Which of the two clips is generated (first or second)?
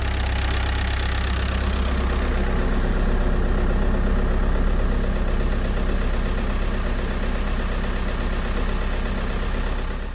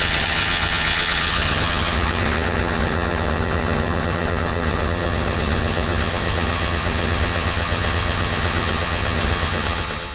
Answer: second